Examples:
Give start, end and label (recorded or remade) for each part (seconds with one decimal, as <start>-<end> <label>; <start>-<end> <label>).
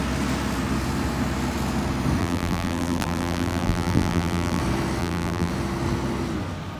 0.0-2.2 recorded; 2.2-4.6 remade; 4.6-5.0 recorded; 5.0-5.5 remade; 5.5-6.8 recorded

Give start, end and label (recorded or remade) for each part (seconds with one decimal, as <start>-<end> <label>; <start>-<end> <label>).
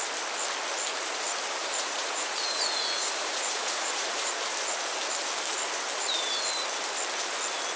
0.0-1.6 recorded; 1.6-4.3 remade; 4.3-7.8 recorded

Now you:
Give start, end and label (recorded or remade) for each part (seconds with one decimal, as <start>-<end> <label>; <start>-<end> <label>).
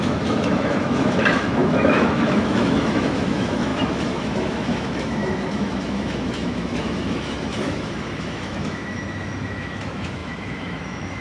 0.0-11.2 remade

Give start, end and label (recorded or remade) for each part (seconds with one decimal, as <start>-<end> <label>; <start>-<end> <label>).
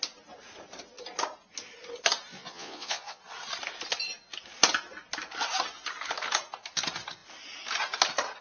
0.0-2.3 recorded; 2.3-3.2 remade; 3.2-8.4 recorded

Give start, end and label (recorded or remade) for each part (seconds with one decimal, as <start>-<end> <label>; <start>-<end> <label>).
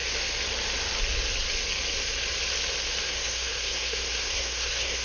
0.0-3.0 recorded; 3.0-5.0 remade